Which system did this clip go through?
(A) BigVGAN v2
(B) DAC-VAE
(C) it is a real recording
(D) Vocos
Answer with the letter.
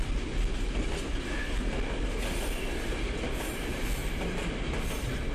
C